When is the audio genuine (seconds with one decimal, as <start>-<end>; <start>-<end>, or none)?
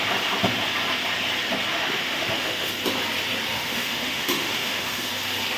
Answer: 0.0-1.7; 2.7-3.5; 5.1-5.6